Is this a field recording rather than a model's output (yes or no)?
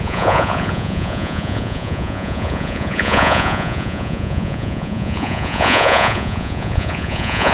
no